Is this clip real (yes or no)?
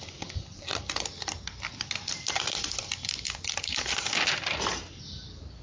no